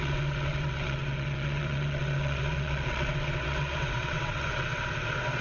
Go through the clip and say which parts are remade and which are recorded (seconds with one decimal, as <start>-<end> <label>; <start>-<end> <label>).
0.0-5.4 remade